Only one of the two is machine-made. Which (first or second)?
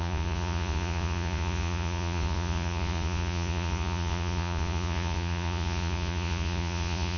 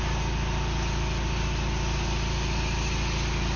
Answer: first